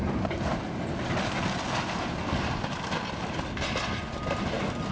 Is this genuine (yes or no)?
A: yes